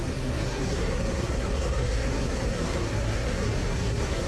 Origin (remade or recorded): remade